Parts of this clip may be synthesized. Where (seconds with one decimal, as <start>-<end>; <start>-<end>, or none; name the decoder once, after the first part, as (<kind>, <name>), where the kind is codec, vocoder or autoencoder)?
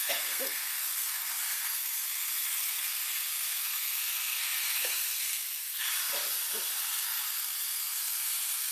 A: 0.0-5.9 (codec, SNAC); 6.8-8.7